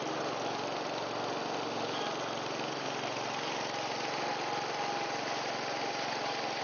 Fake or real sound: real